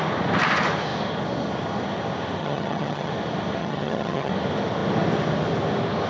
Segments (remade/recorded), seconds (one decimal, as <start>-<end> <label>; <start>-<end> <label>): 0.0-2.4 recorded; 2.4-3.1 remade; 3.1-3.6 recorded; 3.6-4.3 remade; 4.3-6.1 recorded